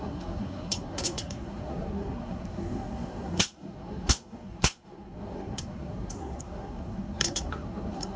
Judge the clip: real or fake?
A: fake